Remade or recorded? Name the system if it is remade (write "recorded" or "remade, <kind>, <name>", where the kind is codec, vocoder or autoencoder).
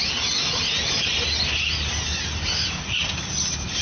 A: recorded